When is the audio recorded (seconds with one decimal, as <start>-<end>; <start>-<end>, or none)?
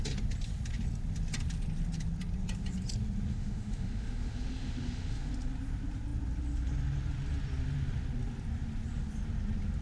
0.0-3.3; 5.3-9.8